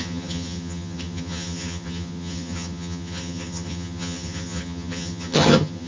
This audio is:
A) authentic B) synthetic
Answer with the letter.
B